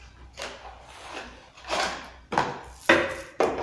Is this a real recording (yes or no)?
yes